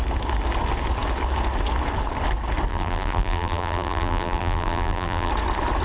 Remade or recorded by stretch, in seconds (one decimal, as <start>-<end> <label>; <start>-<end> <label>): 0.0-2.7 recorded; 2.7-5.3 remade; 5.3-5.8 recorded

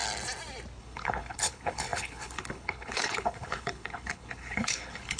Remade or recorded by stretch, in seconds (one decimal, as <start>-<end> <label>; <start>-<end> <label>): 0.0-0.8 recorded; 0.8-5.2 remade